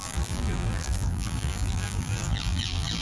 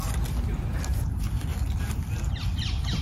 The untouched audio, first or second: second